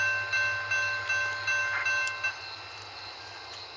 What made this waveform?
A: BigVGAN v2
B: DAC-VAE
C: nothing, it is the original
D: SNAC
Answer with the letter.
C